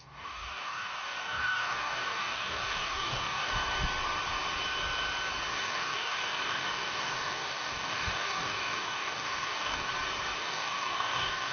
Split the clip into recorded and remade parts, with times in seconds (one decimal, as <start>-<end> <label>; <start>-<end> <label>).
0.0-3.5 remade; 3.5-5.5 recorded; 5.5-9.9 remade; 9.9-10.4 recorded; 10.4-11.5 remade